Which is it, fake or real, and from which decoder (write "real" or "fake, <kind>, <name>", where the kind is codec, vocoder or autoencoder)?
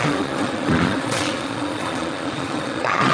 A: fake, vocoder, Vocos